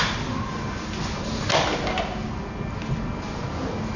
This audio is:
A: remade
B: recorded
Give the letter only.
B